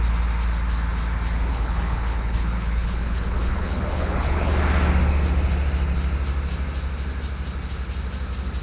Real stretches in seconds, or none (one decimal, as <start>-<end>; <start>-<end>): 0.0-1.5; 4.5-8.6